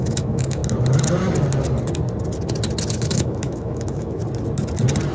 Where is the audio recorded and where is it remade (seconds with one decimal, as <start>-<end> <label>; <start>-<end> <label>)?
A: 0.0-0.6 remade; 0.6-2.9 recorded; 2.9-4.2 remade; 4.2-5.1 recorded